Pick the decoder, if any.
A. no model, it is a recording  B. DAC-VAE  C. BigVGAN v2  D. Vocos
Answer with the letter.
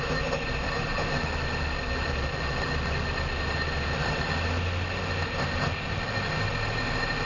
A